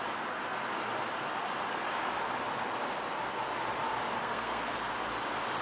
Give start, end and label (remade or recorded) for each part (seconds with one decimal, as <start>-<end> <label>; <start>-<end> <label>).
0.0-4.2 recorded; 4.2-4.9 remade; 4.9-5.6 recorded